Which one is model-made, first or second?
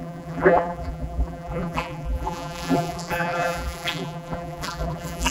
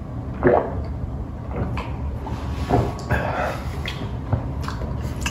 first